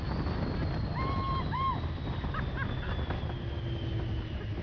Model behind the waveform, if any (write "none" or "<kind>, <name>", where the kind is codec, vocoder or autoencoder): none